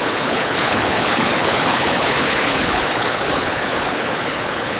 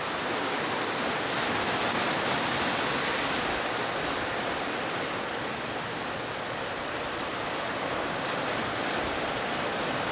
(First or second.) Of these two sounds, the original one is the second